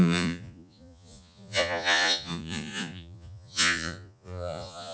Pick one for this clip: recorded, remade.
remade